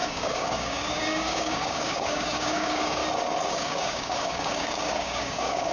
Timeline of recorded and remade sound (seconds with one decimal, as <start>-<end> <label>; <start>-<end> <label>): 0.0-3.0 remade; 3.0-3.5 recorded; 3.5-5.7 remade